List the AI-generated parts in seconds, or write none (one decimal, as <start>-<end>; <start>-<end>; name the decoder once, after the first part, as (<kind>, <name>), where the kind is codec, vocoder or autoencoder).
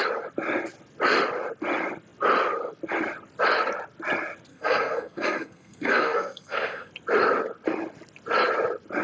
4.5-6.9 (codec, SNAC)